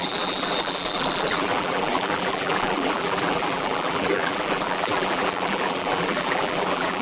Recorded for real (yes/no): no